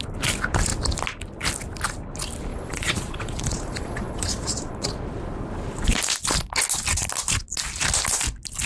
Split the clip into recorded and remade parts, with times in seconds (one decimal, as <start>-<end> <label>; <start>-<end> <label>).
0.0-2.5 recorded; 2.5-4.9 remade; 4.9-8.7 recorded